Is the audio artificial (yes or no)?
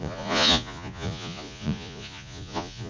yes